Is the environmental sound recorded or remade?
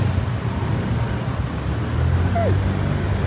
recorded